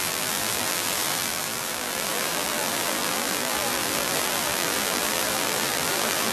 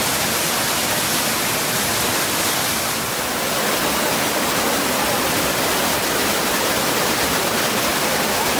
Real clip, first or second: second